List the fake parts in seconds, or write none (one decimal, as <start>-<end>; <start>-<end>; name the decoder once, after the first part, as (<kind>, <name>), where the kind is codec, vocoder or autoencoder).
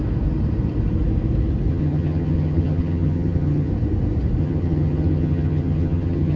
1.7-3.7 (vocoder, HiFi-GAN); 4.4-6.4